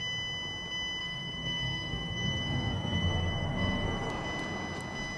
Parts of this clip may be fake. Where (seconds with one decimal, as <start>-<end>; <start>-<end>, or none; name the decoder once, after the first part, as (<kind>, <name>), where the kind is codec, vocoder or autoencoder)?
1.0-4.1 (codec, SNAC)